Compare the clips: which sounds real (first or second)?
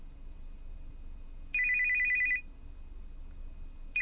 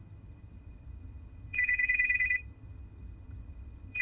first